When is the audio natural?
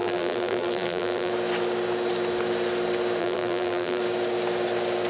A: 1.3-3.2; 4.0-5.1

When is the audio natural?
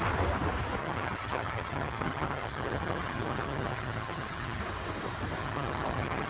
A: 0.0-0.8; 4.6-5.4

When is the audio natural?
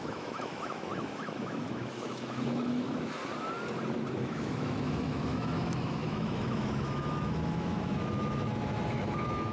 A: 3.2-4.1